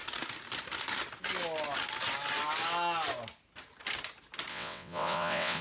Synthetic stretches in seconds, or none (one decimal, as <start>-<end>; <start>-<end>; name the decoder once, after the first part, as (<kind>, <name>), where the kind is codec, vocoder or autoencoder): 4.5-5.6 (vocoder, WaveNeXt)